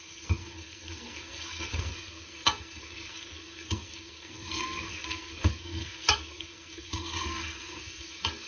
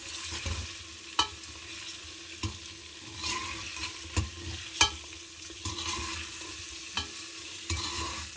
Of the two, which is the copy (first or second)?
first